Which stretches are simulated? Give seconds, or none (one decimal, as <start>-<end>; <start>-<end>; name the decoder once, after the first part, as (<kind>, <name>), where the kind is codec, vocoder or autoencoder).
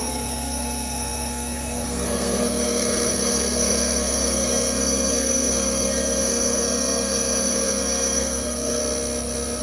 0.0-8.8 (codec, SNAC)